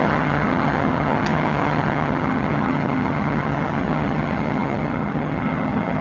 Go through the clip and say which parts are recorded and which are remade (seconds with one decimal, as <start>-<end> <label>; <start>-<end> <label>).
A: 0.0-6.0 remade